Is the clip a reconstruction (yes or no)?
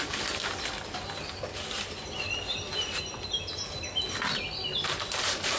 no